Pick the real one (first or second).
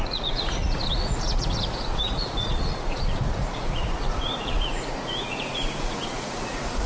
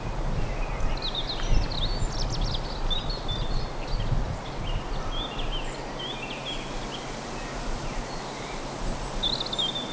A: second